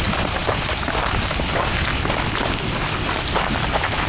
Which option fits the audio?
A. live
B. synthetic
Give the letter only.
A